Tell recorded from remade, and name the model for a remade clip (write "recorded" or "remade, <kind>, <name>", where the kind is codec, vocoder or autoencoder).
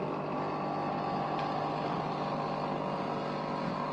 recorded